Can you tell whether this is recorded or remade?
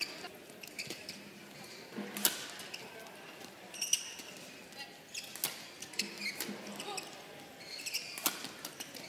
recorded